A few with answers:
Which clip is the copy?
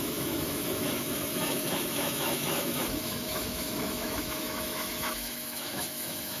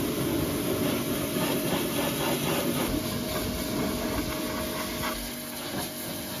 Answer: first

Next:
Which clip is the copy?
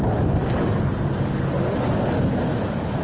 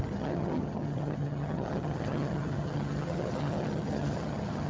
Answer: second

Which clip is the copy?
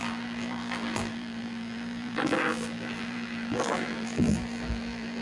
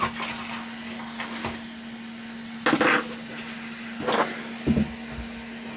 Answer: first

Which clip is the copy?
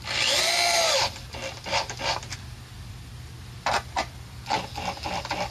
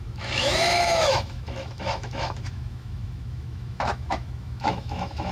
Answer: second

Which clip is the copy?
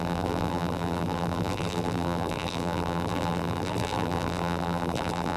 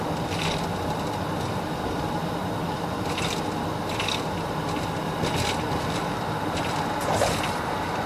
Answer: first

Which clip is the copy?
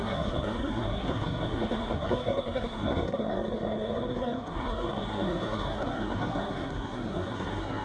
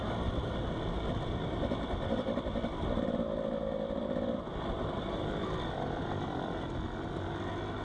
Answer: first